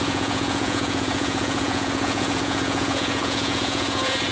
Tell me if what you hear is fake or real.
fake